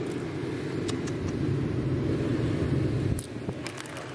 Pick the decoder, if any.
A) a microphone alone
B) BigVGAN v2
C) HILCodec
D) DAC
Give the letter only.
A